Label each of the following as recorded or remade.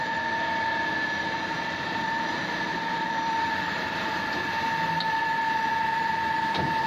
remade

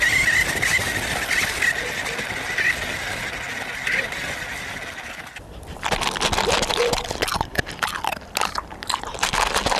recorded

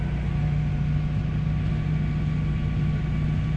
recorded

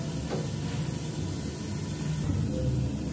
recorded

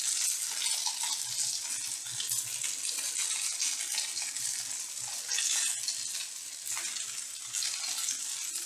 recorded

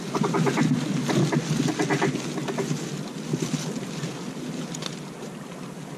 recorded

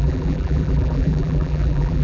remade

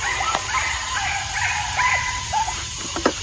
remade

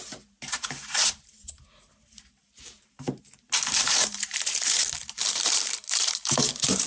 remade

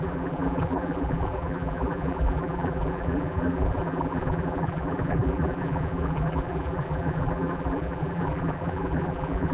remade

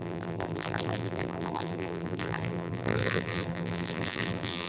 remade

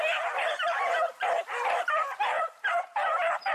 remade